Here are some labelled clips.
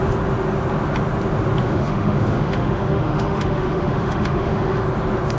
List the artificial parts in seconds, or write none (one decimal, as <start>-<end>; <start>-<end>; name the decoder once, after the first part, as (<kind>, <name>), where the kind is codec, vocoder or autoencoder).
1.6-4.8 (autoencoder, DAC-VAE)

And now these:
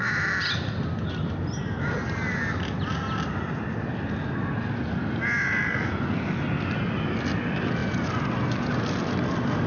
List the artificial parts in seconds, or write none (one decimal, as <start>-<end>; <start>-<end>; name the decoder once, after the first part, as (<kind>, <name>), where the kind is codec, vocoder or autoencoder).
none

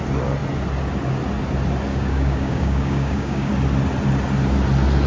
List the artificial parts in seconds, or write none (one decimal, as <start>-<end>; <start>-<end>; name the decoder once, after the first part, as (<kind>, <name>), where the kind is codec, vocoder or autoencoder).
1.9-3.5 (codec, DAC)